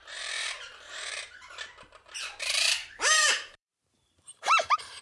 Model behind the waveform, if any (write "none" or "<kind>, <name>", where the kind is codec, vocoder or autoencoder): vocoder, BigVGAN v2